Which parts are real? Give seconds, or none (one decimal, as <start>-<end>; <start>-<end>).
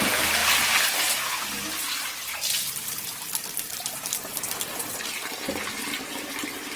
0.0-1.8; 3.0-3.7; 5.1-6.8